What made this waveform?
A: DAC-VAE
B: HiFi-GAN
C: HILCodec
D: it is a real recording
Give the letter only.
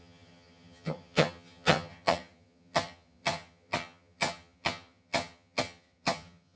B